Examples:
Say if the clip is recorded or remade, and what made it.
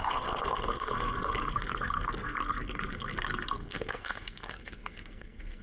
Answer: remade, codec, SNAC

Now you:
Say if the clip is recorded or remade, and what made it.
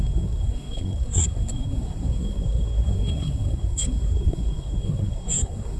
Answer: remade, codec, SNAC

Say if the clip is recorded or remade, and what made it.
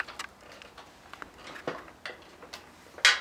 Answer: recorded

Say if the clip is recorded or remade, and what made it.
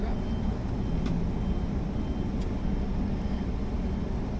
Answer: recorded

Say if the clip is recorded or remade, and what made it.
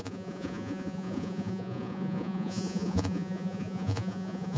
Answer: remade, vocoder, Vocos